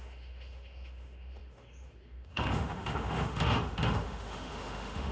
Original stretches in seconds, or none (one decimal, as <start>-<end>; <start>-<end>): none